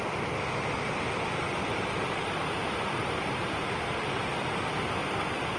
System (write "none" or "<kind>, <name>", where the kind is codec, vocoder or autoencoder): none